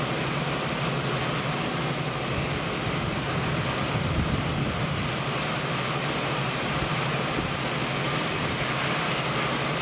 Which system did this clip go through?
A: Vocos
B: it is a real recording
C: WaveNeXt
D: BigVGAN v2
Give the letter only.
B